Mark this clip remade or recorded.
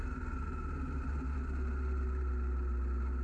recorded